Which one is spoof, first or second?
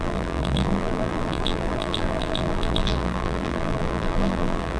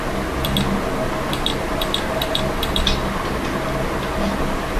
first